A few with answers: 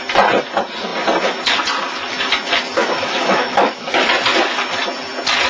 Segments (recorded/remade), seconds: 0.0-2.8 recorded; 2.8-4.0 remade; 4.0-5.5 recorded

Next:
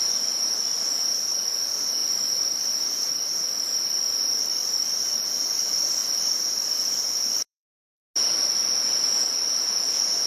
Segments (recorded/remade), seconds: 0.0-2.0 recorded; 2.0-5.2 remade; 5.2-6.0 recorded; 6.0-8.0 remade; 8.0-10.3 recorded

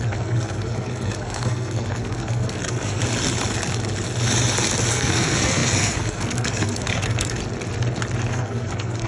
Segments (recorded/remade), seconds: 0.0-3.0 remade; 3.0-4.9 recorded; 4.9-7.4 remade; 7.4-8.3 recorded; 8.3-9.1 remade

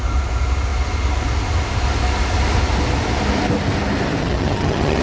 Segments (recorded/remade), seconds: 0.0-4.2 recorded; 4.2-5.0 remade

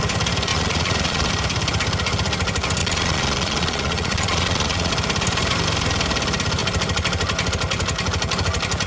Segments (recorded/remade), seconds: 0.0-0.5 recorded; 0.5-1.3 remade; 1.3-2.8 recorded; 2.8-4.9 remade; 4.9-8.9 recorded